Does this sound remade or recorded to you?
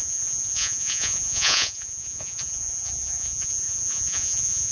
remade